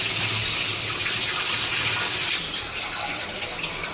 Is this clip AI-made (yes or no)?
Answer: yes